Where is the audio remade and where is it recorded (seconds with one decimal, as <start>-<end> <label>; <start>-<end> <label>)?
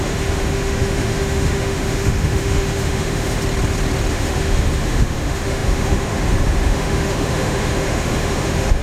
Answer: 0.0-3.4 remade; 3.4-4.1 recorded; 4.1-8.8 remade